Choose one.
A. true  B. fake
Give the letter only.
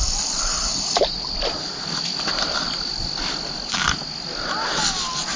A